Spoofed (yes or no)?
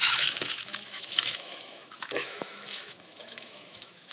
yes